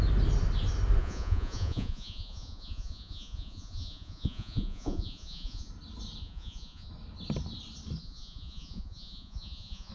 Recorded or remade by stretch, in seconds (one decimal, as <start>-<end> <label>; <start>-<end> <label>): 0.0-1.0 recorded; 1.0-5.7 remade; 5.7-6.2 recorded; 6.2-6.9 remade; 6.9-8.0 recorded; 8.0-9.9 remade